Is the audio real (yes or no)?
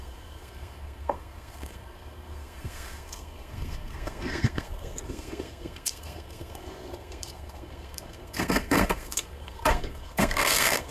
no